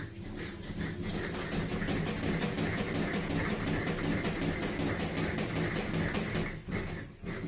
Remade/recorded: recorded